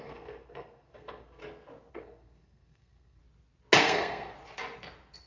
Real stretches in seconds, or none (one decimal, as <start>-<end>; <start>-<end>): 1.4-1.9; 3.2-3.8; 4.3-5.3